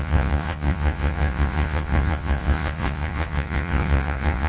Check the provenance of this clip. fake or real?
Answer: fake